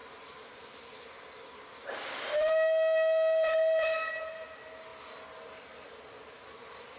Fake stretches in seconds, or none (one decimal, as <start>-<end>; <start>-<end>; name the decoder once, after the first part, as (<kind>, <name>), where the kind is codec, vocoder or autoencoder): none